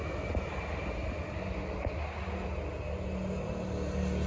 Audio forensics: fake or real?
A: real